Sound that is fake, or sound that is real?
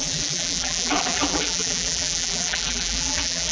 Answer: fake